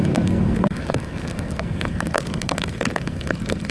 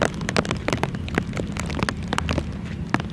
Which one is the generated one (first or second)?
first